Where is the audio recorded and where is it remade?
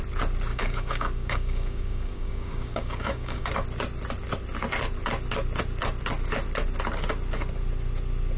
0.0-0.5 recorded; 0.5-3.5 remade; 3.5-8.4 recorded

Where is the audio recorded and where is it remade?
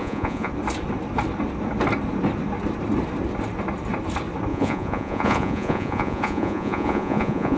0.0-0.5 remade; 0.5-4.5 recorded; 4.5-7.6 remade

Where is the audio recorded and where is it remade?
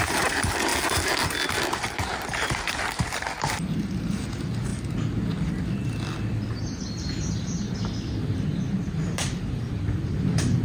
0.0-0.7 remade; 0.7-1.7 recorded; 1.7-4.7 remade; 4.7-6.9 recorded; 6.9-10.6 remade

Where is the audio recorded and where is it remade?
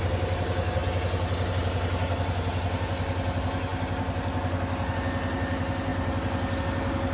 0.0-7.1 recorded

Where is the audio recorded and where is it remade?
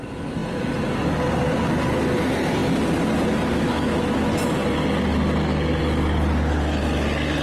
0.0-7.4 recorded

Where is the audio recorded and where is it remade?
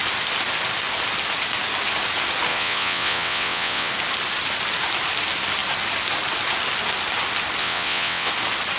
0.0-2.5 recorded; 2.5-3.9 remade; 3.9-7.6 recorded; 7.6-8.3 remade; 8.3-8.8 recorded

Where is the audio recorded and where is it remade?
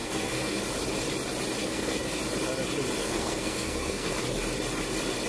0.0-0.6 remade; 0.6-1.6 recorded; 1.6-2.2 remade; 2.2-3.0 recorded; 3.0-4.2 remade; 4.2-5.3 recorded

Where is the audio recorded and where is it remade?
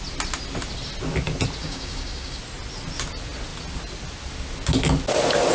0.0-1.6 recorded; 1.6-2.4 remade; 2.4-5.5 recorded